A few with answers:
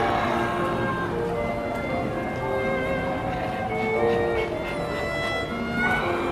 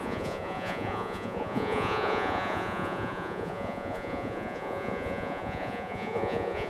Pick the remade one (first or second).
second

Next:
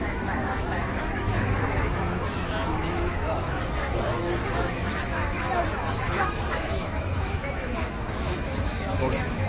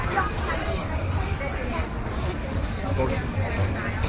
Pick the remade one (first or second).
first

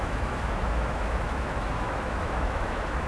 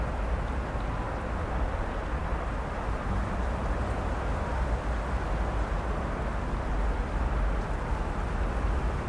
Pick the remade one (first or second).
first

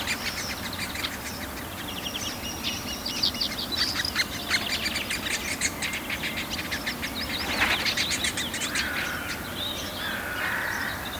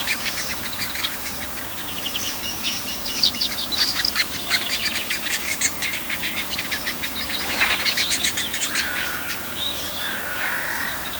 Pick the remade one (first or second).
second